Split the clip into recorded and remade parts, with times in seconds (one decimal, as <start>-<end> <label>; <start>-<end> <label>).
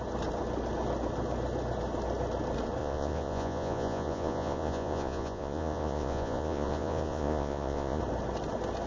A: 0.0-2.8 recorded; 2.8-8.0 remade; 8.0-8.9 recorded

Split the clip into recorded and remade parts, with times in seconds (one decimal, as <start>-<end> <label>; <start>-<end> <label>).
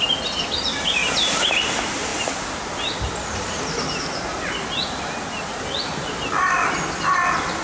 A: 0.0-7.6 recorded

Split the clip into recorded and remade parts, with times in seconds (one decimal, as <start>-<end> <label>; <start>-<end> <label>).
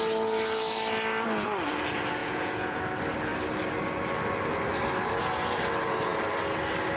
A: 0.0-2.2 recorded; 2.2-2.8 remade; 2.8-7.0 recorded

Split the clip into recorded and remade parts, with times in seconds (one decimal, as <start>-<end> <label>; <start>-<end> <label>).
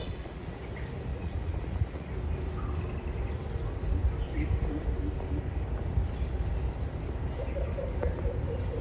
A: 0.0-0.5 remade; 0.5-1.1 recorded; 1.1-2.1 remade; 2.1-8.8 recorded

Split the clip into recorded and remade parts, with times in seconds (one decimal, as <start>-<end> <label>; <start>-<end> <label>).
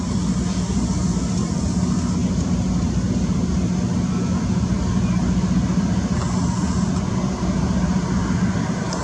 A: 0.0-9.0 recorded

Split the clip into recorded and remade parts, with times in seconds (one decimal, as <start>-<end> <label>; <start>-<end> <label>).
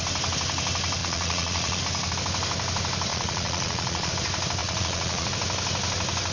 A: 0.0-1.0 recorded; 1.0-1.8 remade; 1.8-3.1 recorded; 3.1-4.1 remade; 4.1-4.6 recorded; 4.6-5.3 remade; 5.3-6.3 recorded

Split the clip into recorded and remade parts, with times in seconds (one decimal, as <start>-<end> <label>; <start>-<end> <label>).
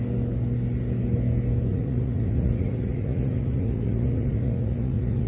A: 0.0-1.7 recorded; 1.7-5.3 remade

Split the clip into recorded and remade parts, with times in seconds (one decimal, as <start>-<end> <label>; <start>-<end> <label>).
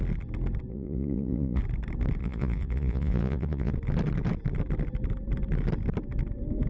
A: 0.0-0.7 recorded; 0.7-1.6 remade; 1.6-2.2 recorded; 2.2-3.7 remade; 3.7-6.7 recorded